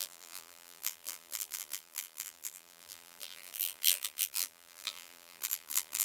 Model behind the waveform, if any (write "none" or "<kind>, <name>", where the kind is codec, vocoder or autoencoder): vocoder, BigVGAN v2